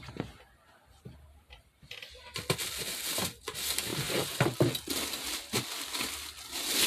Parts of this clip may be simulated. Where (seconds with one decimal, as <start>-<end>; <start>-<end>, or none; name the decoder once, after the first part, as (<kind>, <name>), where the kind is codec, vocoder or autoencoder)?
none